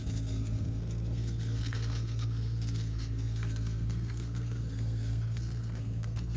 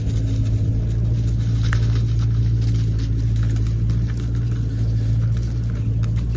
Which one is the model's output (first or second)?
first